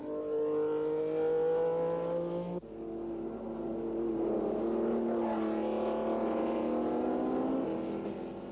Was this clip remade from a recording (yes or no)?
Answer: no